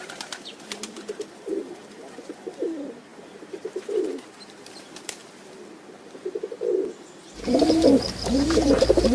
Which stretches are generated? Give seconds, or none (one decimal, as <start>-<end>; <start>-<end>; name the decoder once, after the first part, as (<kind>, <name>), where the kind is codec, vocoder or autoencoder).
0.0-5.2 (vocoder, BigVGAN v2); 6.7-9.1